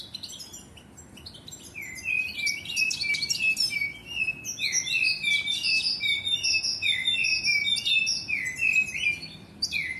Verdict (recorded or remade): recorded